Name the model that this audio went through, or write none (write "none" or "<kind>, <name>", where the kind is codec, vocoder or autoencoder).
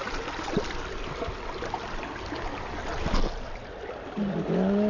none